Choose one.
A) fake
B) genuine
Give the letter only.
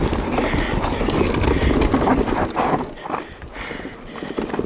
B